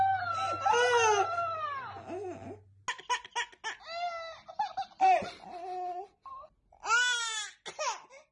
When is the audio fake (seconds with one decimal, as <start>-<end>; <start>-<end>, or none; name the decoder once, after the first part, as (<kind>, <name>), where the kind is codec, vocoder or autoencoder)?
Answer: none